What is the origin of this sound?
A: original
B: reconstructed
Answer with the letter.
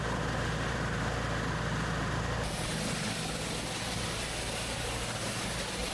A